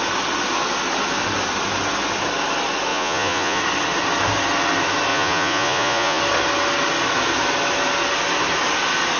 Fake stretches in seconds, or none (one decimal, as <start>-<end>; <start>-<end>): 2.9-3.6; 5.1-6.2